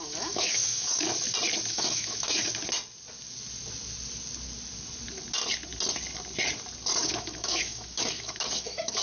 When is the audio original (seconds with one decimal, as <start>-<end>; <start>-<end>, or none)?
1.1-1.7; 2.5-7.0